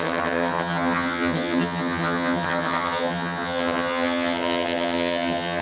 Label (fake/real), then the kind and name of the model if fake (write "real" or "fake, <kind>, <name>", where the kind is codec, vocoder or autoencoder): fake, vocoder, HiFi-GAN